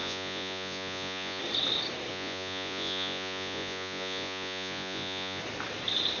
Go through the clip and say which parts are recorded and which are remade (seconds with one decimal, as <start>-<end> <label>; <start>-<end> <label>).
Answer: 0.0-1.4 remade; 1.4-2.1 recorded; 2.1-5.4 remade; 5.4-6.2 recorded